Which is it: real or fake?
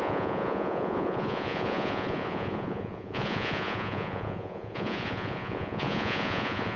fake